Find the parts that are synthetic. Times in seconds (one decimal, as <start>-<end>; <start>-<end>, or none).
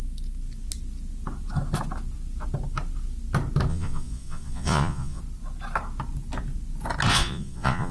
3.7-5.2; 7.1-7.9